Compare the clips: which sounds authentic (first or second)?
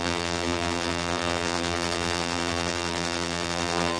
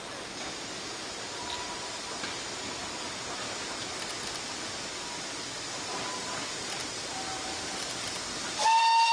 second